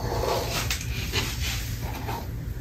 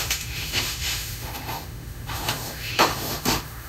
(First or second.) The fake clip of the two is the second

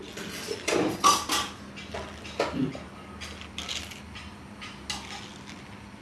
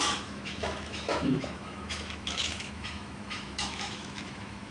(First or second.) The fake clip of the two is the second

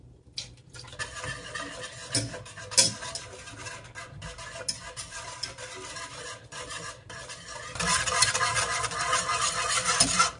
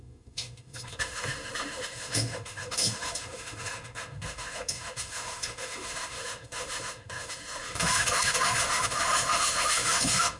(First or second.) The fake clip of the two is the second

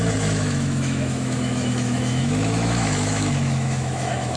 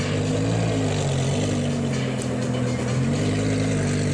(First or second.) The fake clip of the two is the first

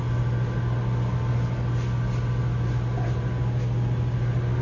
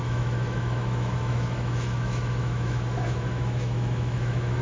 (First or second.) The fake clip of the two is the second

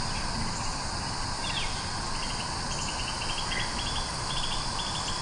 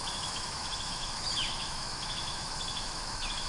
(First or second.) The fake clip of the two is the second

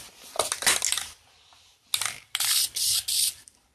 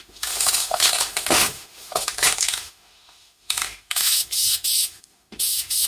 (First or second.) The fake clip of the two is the second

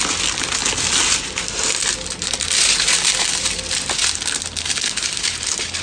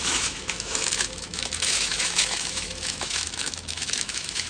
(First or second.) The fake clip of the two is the second